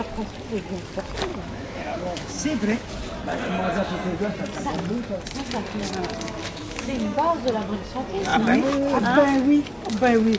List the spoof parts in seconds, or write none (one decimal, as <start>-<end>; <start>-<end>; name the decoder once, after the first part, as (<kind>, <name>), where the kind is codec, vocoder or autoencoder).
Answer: 1.3-2.9 (autoencoder, DAC-VAE); 6.4-7.3